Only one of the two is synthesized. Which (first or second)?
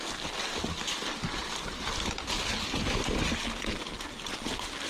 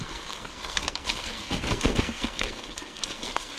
second